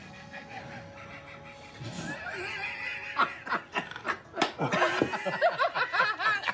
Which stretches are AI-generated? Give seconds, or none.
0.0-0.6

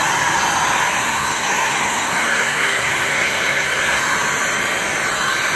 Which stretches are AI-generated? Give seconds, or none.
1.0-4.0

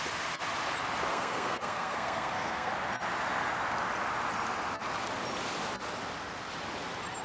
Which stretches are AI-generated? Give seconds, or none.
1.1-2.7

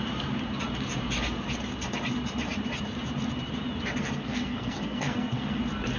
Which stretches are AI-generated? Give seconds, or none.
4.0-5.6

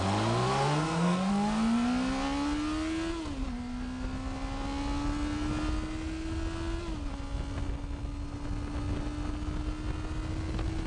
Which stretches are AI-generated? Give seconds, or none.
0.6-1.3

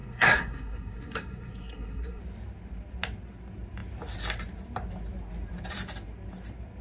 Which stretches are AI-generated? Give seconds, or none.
0.0-2.2

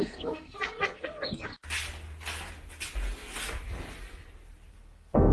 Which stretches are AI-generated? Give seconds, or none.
0.0-1.5; 4.7-5.3